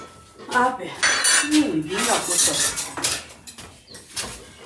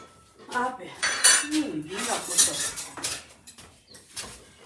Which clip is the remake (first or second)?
second